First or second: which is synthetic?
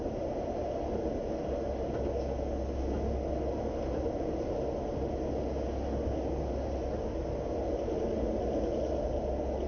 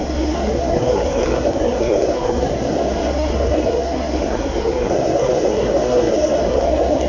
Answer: second